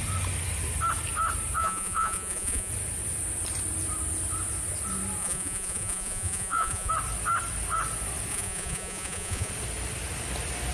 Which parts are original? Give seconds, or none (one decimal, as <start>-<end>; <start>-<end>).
0.0-1.6; 2.7-5.2; 6.9-8.3; 9.5-10.7